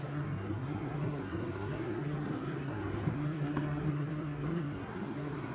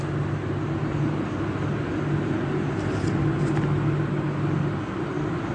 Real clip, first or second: second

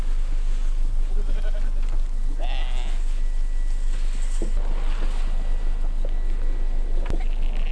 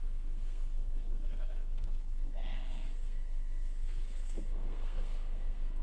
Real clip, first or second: first